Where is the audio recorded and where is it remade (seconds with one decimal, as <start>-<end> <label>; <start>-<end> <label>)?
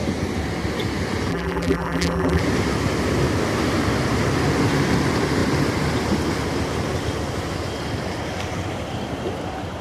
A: 0.0-1.3 recorded; 1.3-2.4 remade; 2.4-9.8 recorded